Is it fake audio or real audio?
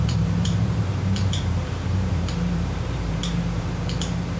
fake